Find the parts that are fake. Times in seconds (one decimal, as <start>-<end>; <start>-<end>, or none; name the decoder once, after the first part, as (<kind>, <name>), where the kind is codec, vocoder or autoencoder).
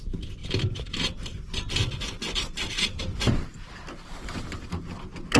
0.4-3.6 (vocoder, BigVGAN v2)